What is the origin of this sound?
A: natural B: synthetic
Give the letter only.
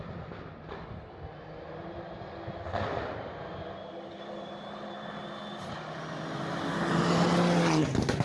A